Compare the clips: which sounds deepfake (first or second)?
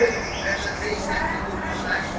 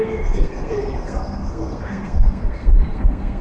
second